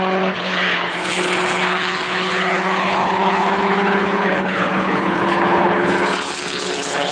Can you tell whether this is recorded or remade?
remade